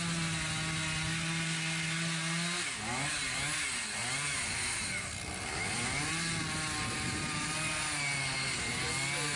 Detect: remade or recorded recorded